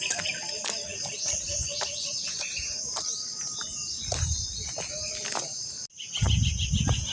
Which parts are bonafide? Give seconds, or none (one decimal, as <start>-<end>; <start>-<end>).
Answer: 0.0-7.1